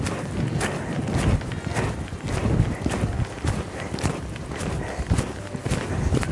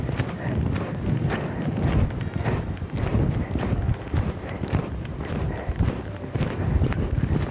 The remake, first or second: second